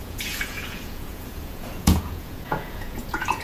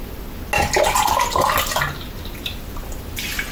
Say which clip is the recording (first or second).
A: second